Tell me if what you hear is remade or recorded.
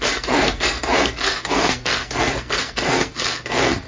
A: remade